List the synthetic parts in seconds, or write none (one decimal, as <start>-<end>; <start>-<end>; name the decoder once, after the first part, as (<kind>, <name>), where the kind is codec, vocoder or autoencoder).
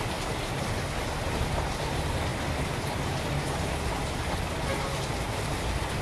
none